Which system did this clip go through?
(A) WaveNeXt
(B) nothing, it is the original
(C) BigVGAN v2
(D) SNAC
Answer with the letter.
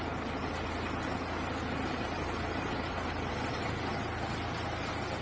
B